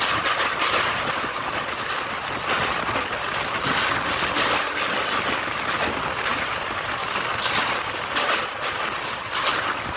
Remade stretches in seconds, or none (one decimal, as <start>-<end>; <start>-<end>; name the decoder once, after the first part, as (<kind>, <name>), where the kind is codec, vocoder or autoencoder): none